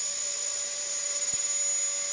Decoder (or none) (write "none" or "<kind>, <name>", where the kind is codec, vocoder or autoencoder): none